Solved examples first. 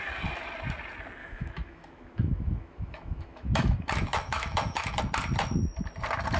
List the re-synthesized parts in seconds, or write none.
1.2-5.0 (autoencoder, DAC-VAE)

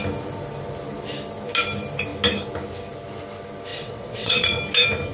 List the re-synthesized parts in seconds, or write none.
3.7-4.6 (vocoder, WaveNeXt)

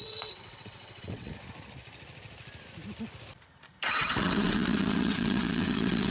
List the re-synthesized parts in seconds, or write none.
0.0-1.3 (vocoder, WaveNeXt); 3.9-6.1